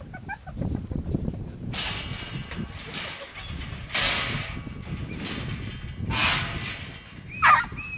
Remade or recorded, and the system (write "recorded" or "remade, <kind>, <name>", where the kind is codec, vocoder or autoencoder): recorded